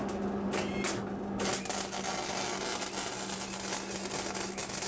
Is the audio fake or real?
real